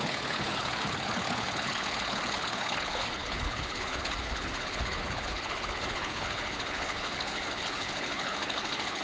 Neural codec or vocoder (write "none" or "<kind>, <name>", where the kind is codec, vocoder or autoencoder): codec, HILCodec